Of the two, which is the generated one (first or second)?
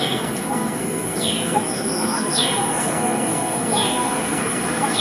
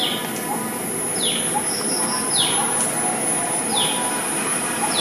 first